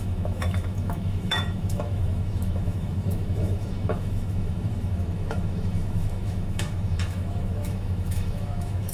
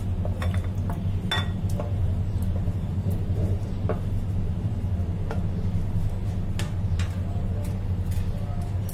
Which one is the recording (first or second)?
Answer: second